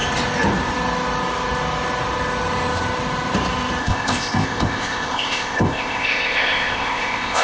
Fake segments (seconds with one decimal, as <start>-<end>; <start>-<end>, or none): 3.8-7.4